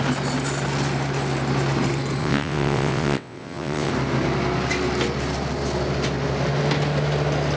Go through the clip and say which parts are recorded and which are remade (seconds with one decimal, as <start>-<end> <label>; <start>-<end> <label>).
0.0-2.2 recorded; 2.2-3.9 remade; 3.9-7.6 recorded